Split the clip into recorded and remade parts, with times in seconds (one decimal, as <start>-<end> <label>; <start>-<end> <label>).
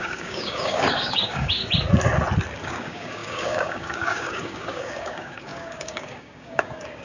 0.0-1.6 remade; 1.6-2.6 recorded; 2.6-7.0 remade